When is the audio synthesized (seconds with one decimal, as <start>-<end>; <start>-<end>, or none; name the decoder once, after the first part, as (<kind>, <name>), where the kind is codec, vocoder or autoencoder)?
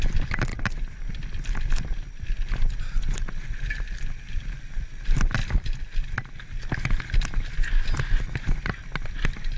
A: none